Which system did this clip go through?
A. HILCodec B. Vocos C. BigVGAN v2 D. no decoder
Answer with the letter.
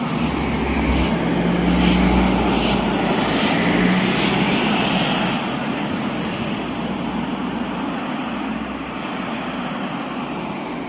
D